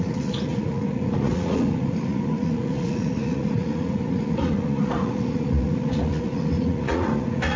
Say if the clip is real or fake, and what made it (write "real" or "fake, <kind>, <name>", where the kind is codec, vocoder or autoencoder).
fake, vocoder, Vocos